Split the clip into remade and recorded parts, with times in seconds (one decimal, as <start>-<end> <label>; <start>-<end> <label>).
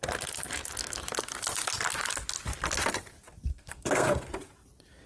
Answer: 0.0-3.5 recorded; 3.5-4.3 remade; 4.3-5.1 recorded